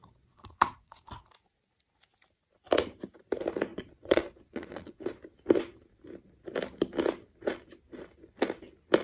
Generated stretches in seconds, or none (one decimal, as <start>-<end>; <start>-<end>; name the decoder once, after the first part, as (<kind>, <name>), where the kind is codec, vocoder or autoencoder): 0.0-1.1 (vocoder, Vocos); 3.7-5.0